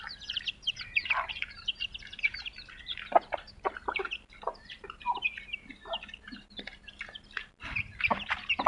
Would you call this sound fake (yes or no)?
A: yes